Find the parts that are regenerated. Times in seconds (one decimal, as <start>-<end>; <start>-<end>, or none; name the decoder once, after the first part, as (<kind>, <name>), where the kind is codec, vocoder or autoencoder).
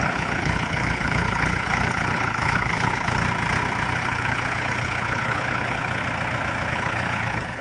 0.0-3.2 (codec, HILCodec); 4.0-6.0; 6.7-7.6